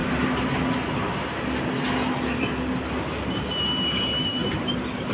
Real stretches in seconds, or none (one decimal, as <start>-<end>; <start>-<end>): 0.0-5.1